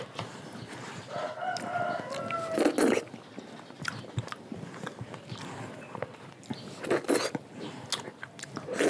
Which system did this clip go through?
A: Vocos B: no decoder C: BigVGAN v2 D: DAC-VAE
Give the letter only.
B